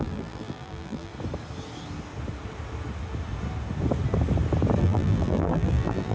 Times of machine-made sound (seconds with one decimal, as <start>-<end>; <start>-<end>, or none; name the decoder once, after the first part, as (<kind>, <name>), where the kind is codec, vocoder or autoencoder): 0.0-1.1 (vocoder, BigVGAN v2); 4.8-6.1